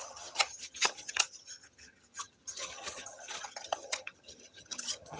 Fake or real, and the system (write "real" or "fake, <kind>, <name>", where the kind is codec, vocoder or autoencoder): fake, vocoder, HiFi-GAN